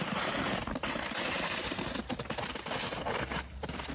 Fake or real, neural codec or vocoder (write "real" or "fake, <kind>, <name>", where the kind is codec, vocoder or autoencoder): real